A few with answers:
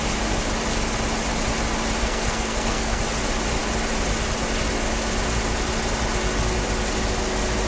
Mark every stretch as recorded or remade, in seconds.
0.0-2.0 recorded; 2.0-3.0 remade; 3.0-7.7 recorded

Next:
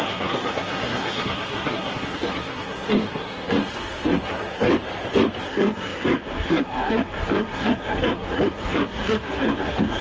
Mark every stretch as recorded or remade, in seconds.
0.0-4.7 remade; 4.7-5.4 recorded; 5.4-10.0 remade

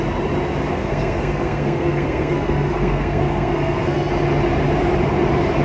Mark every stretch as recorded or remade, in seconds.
0.0-0.7 recorded; 0.7-4.1 remade; 4.1-5.6 recorded

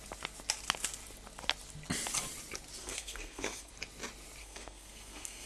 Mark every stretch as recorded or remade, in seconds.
0.0-2.8 recorded; 2.8-3.7 remade; 3.7-4.4 recorded; 4.4-5.5 remade